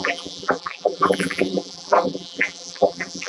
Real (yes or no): no